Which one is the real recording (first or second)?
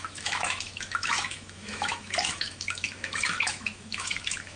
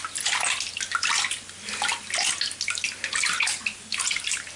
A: second